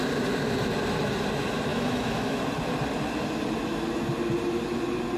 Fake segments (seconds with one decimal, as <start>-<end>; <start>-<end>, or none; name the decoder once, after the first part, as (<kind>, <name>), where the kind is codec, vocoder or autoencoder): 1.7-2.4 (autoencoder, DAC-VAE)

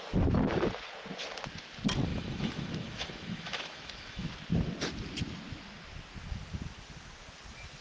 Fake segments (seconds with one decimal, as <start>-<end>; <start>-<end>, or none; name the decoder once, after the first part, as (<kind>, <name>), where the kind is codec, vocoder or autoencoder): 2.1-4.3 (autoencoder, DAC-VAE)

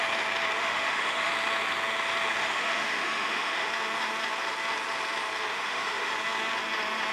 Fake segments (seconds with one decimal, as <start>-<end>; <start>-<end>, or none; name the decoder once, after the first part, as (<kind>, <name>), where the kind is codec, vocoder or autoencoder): 0.6-1.3 (autoencoder, DAC-VAE); 2.4-3.7; 5.5-6.1